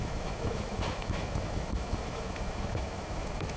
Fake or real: fake